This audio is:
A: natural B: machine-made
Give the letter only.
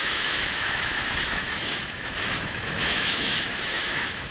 B